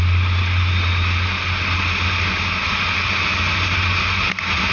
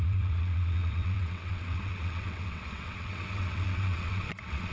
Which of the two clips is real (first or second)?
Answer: first